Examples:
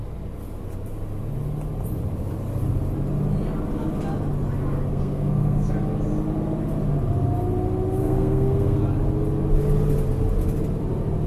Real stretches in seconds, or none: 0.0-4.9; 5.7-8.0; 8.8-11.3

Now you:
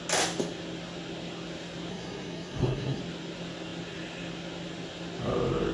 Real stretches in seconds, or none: 0.0-1.9; 3.0-5.7

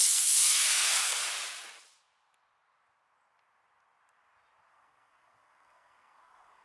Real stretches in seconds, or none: 1.2-4.7